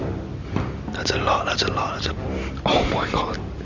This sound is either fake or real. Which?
real